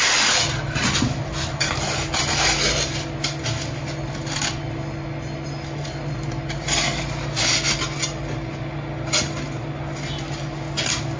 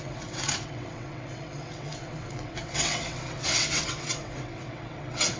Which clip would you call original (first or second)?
first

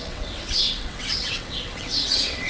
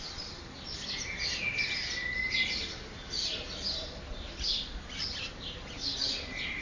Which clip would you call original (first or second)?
second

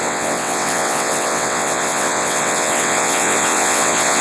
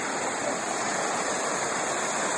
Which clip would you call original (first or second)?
second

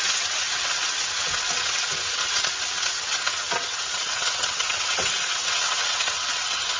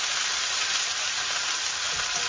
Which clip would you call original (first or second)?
second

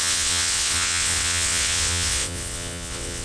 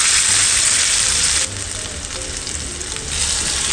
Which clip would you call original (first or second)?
second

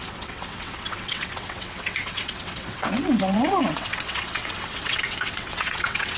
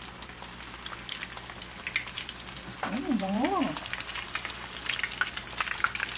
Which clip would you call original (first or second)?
second